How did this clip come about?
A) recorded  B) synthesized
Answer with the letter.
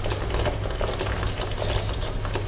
A